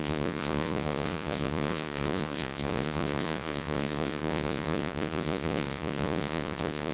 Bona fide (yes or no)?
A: no